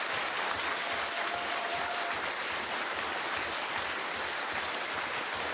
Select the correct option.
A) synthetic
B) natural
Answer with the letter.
B